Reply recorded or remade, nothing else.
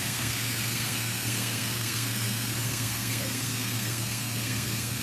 remade